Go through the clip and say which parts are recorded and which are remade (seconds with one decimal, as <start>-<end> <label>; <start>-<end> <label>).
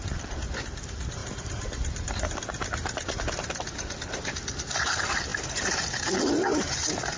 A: 0.0-5.3 remade; 5.3-5.9 recorded; 5.9-7.2 remade